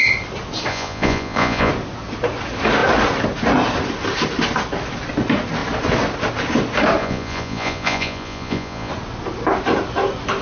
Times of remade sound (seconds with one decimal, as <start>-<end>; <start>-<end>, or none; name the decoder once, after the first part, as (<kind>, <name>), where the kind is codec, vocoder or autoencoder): 0.7-1.7 (vocoder, Vocos); 7.0-8.9